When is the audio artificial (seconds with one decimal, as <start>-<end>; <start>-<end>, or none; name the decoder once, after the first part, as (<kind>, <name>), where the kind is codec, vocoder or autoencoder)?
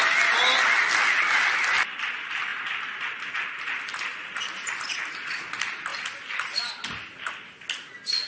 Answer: none